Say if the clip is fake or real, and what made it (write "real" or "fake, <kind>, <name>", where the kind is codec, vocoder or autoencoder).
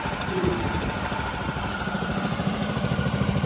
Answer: fake, vocoder, BigVGAN v2